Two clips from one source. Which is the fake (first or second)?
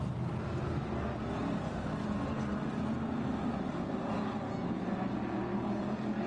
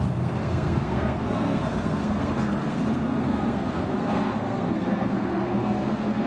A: second